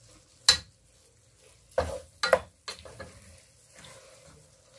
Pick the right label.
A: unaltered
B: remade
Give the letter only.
A